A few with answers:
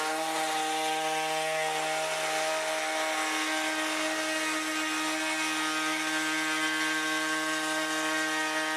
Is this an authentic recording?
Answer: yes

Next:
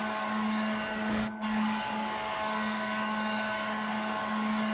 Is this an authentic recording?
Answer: no